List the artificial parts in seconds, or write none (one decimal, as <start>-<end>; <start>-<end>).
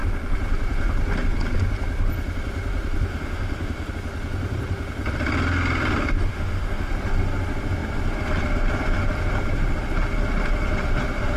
3.1-3.9; 6.3-6.9